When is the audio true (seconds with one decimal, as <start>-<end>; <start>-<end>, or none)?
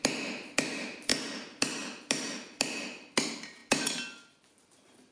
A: 0.0-5.1